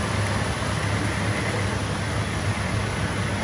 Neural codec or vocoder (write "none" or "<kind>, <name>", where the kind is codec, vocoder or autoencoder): none